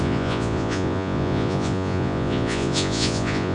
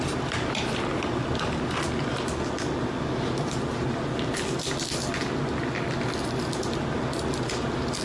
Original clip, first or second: second